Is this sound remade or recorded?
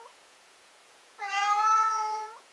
remade